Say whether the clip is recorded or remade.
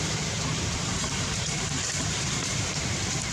remade